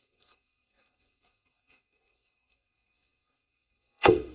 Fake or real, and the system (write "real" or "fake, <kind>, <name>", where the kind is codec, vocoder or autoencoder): fake, codec, SNAC